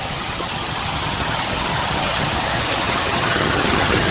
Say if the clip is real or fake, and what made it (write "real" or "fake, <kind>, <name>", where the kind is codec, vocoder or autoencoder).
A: fake, vocoder, HiFi-GAN